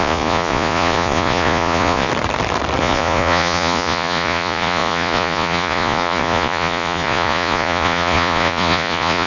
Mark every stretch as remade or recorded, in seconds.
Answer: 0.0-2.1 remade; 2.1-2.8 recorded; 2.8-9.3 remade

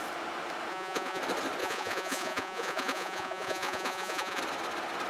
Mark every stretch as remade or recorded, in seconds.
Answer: 0.0-0.7 recorded; 0.7-1.2 remade; 1.2-1.6 recorded; 1.6-4.4 remade; 4.4-5.1 recorded

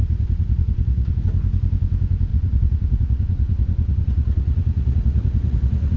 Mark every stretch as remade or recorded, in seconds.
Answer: 0.0-1.2 remade; 1.2-2.3 recorded; 2.3-6.0 remade

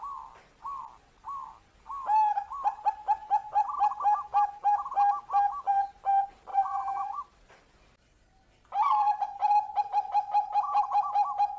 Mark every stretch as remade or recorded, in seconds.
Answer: 0.0-6.5 recorded; 6.5-7.6 remade; 7.6-11.6 recorded

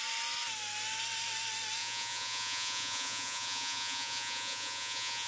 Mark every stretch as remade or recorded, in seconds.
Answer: 0.0-1.8 recorded; 1.8-5.3 remade

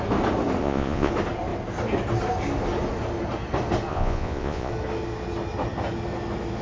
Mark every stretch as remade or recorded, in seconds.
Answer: 0.0-0.6 recorded; 0.6-1.1 remade; 1.1-3.9 recorded; 3.9-4.7 remade; 4.7-6.6 recorded

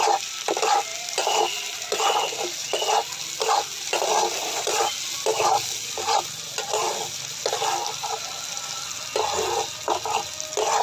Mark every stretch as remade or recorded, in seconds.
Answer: 0.0-10.8 recorded

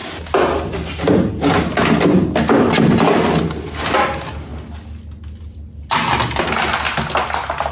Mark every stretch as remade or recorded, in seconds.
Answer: 0.0-7.7 recorded